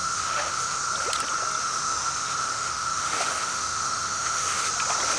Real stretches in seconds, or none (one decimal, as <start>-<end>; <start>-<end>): 0.8-1.6; 4.7-5.2